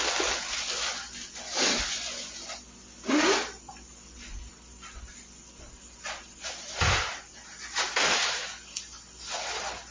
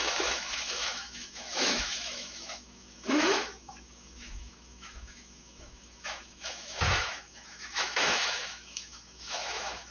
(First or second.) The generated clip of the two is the second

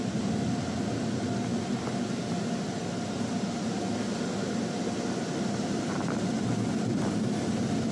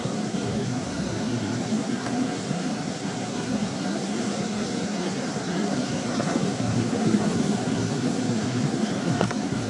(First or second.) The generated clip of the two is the second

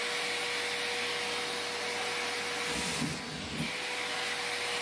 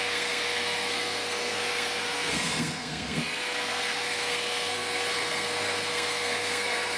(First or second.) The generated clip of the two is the second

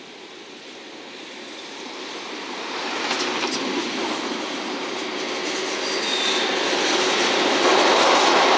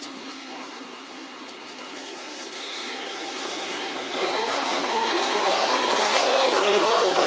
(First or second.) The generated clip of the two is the second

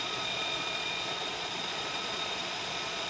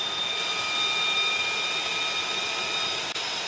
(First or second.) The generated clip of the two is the first